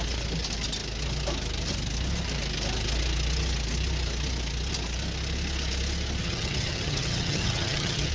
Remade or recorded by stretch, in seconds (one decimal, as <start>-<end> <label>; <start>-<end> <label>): 0.0-6.2 recorded; 6.2-8.1 remade